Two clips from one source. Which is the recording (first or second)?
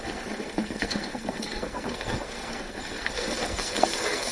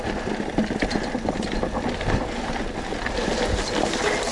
second